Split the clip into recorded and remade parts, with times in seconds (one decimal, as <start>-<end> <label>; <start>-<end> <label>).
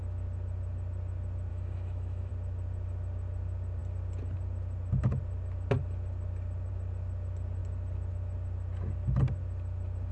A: 0.0-1.5 recorded; 1.5-2.3 remade; 2.3-10.1 recorded